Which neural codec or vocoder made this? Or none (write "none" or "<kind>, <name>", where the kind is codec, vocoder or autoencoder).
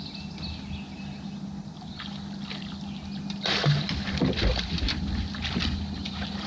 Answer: none